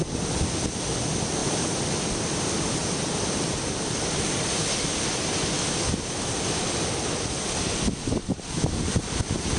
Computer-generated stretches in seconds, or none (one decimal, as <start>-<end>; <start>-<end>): 1.4-6.1